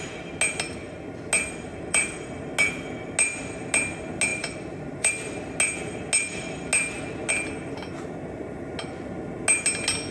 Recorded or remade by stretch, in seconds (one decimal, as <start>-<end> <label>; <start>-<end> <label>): 0.0-1.7 recorded; 1.7-2.5 remade; 2.5-4.3 recorded; 4.3-5.1 remade; 5.1-10.1 recorded